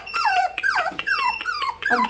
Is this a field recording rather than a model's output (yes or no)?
no